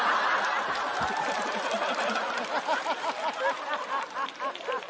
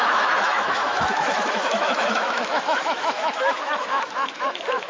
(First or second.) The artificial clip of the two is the second